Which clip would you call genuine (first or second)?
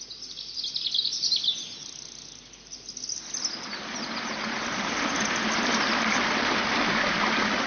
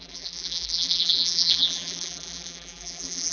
first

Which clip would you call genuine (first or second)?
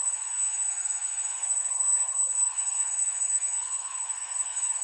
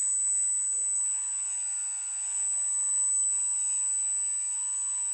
second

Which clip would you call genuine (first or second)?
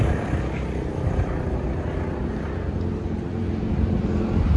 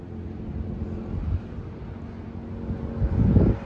second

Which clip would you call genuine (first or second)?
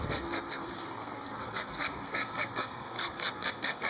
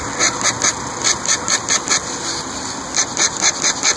second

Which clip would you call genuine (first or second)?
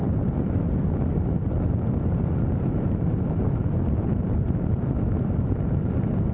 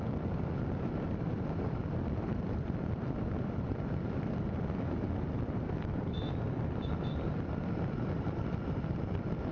first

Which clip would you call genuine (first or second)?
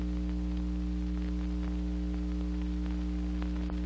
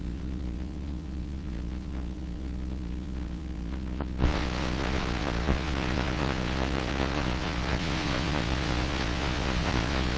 first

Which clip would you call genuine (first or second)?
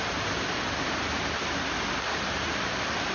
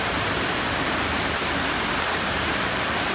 first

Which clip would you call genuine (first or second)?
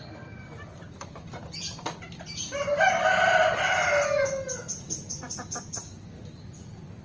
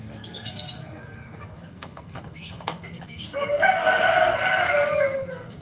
first